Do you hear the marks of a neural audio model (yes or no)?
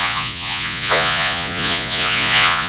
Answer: yes